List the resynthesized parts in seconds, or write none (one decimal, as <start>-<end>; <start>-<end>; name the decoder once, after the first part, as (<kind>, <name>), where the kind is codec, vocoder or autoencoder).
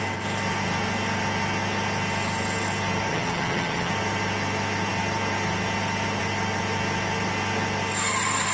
3.1-3.9 (vocoder, HiFi-GAN)